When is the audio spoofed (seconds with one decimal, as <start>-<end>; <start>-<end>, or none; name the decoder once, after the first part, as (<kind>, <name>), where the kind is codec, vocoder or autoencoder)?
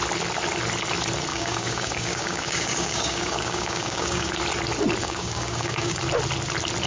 1.3-4.3 (codec, DAC); 5.0-6.0